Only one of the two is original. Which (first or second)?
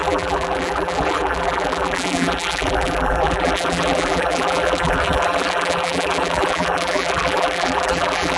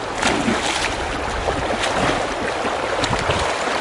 second